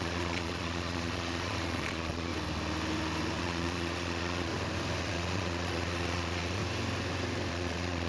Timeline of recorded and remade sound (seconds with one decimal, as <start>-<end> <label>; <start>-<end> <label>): 0.0-2.3 remade; 2.3-3.4 recorded; 3.4-4.5 remade; 4.5-5.0 recorded; 5.0-6.6 remade; 6.6-7.5 recorded; 7.5-8.1 remade